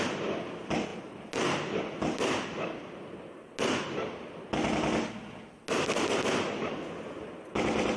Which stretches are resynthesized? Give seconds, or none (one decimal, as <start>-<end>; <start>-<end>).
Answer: none